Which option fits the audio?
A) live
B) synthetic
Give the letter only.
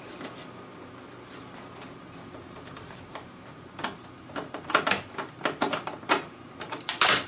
A